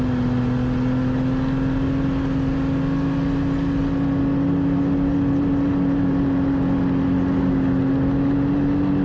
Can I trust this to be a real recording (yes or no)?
yes